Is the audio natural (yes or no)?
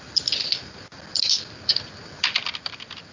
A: yes